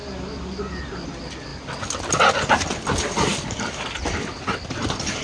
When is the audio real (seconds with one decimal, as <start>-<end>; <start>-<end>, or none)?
0.0-5.2